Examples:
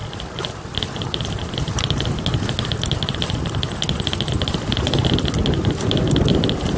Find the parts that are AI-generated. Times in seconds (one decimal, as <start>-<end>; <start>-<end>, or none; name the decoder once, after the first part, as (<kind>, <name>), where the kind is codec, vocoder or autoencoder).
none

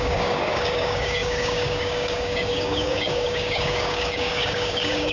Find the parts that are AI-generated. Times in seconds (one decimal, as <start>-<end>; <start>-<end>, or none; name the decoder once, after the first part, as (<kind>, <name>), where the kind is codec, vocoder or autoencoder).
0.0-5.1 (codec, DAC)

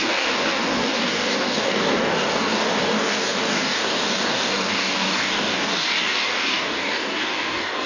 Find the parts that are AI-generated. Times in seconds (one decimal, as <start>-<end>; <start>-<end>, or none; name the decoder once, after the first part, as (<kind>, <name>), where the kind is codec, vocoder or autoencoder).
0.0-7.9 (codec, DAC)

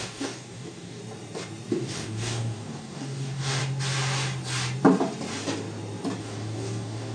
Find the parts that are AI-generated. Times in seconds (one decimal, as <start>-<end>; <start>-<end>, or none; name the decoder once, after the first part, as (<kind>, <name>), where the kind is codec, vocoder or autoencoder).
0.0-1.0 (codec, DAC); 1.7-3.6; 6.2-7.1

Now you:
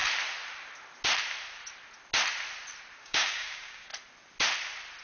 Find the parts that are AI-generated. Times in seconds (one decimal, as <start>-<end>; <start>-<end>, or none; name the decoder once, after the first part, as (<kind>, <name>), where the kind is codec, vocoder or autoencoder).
3.0-3.9 (codec, DAC)

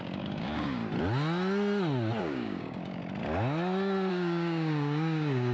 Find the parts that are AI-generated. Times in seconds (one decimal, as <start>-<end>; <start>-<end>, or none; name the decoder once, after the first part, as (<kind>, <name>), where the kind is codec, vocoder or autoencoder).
0.0-0.8 (codec, DAC); 2.2-3.0; 4.1-5.5